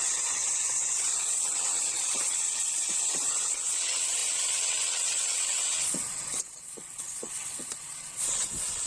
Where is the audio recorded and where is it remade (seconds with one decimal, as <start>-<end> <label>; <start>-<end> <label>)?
0.0-8.9 remade